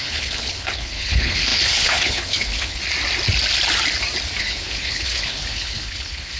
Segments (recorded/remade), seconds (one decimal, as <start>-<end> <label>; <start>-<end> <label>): 0.0-2.8 remade; 2.8-4.4 recorded; 4.4-6.4 remade